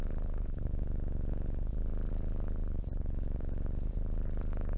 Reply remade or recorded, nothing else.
remade